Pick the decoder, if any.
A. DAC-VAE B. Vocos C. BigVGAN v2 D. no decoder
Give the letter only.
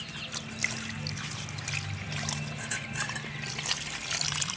D